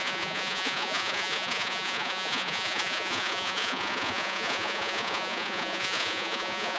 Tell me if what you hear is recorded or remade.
remade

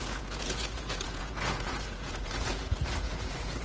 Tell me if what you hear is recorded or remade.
remade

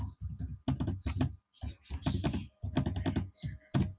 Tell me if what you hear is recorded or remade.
recorded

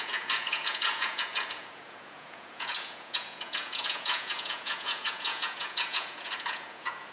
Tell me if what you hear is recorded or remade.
remade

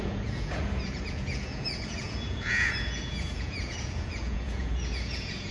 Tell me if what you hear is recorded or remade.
remade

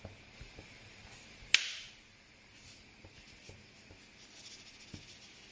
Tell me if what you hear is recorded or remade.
recorded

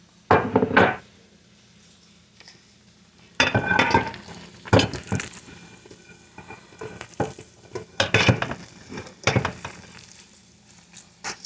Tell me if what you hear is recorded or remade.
recorded